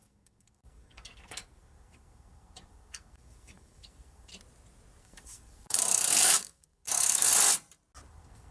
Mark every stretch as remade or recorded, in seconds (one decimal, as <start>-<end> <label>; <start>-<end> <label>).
0.0-4.3 remade; 4.3-5.0 recorded; 5.0-7.3 remade; 7.3-8.1 recorded; 8.1-8.5 remade